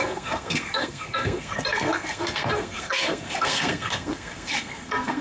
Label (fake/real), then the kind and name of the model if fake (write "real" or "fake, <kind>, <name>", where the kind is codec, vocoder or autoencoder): fake, codec, SNAC